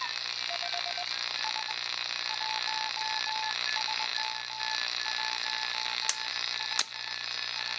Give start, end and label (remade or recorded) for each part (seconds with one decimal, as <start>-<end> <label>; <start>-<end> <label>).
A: 0.0-7.8 recorded